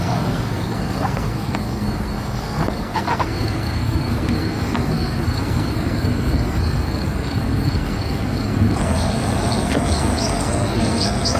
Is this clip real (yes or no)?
no